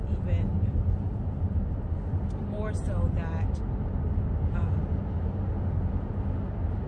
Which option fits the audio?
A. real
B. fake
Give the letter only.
A